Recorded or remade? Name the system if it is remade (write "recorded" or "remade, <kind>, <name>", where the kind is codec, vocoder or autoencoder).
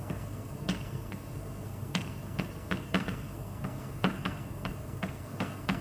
remade, codec, SNAC